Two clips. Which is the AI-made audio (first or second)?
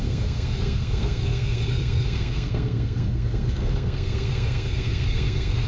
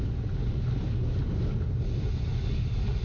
first